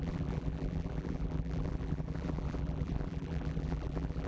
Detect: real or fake fake